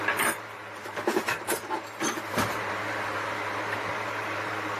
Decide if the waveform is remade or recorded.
remade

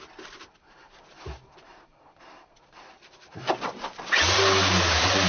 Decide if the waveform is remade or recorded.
recorded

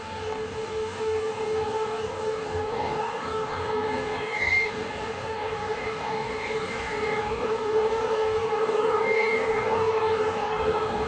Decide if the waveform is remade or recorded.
remade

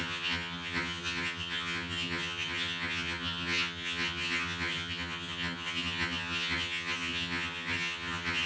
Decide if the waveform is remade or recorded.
remade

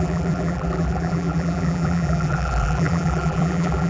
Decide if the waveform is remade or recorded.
remade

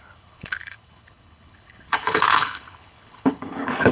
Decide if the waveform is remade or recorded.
remade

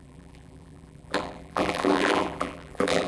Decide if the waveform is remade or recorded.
remade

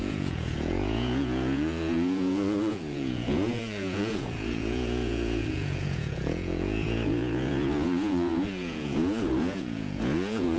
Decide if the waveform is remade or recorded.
remade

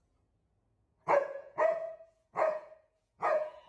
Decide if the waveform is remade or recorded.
remade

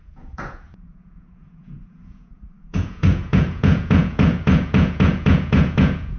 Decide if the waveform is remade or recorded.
remade